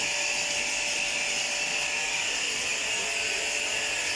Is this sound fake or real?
real